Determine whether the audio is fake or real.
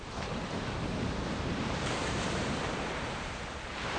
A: fake